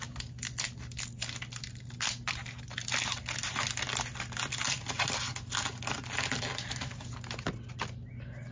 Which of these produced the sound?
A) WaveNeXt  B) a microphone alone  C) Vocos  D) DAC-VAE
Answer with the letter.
B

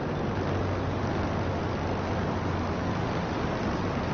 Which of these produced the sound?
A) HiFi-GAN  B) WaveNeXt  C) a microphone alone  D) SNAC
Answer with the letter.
C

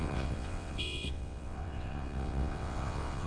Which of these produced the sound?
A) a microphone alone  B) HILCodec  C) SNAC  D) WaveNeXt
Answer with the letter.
D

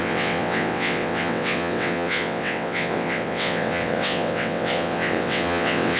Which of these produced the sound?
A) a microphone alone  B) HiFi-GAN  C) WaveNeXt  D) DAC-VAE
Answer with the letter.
C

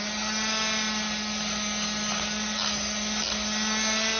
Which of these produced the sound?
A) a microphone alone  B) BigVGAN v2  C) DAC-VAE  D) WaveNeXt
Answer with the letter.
A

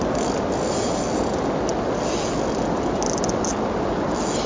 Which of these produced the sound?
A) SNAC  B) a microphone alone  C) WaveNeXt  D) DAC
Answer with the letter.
B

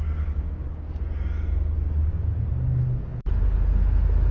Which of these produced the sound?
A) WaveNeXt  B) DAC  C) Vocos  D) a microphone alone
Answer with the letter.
D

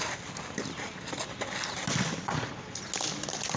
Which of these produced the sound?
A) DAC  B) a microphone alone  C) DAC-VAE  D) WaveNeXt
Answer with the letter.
B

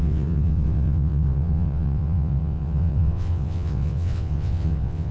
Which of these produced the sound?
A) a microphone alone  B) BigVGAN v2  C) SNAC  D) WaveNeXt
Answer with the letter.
D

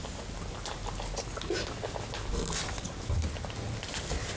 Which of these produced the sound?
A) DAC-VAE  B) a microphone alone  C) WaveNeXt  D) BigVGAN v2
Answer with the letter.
B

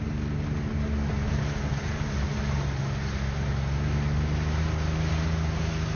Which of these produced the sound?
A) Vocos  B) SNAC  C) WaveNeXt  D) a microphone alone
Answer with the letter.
D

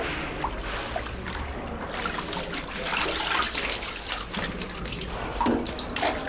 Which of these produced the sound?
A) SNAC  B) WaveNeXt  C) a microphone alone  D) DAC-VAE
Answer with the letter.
C